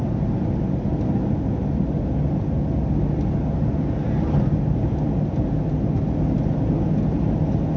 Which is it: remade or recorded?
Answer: recorded